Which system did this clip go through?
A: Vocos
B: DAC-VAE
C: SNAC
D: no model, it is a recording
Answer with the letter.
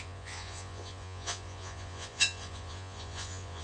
A